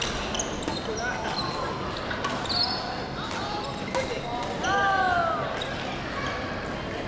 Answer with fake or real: real